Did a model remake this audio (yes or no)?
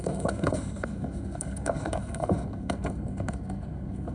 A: yes